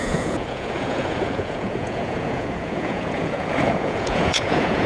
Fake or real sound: fake